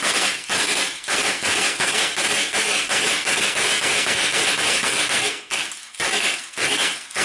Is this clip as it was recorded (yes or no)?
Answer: no